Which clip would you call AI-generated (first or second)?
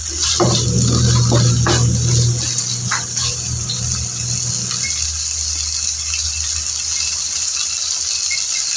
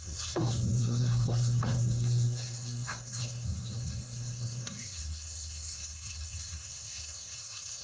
second